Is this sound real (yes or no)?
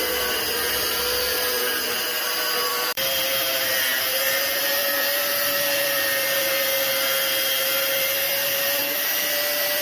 no